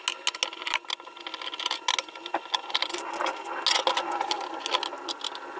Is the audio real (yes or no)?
yes